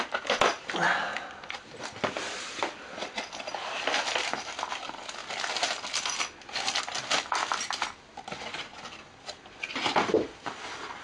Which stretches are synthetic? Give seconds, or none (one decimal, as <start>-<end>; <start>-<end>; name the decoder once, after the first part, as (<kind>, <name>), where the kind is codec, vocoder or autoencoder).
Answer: 7.4-8.1 (vocoder, BigVGAN v2)